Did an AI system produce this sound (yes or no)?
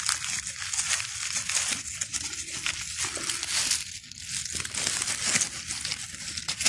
no